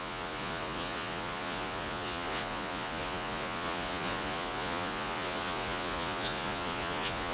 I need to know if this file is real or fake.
fake